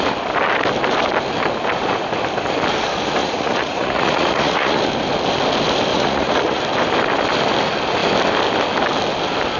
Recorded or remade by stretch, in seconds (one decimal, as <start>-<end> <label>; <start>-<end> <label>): 0.0-3.2 recorded; 3.2-4.8 remade; 4.8-5.9 recorded; 5.9-6.6 remade; 6.6-9.6 recorded